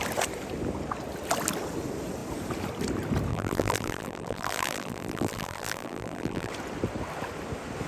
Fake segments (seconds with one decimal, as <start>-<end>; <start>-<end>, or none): 3.3-6.5

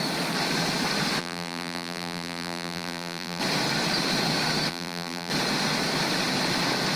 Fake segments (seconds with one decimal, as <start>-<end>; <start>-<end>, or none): 1.2-3.4; 4.7-5.3